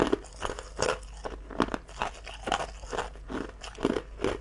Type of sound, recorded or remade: recorded